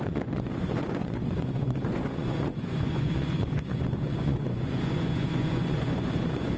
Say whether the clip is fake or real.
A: fake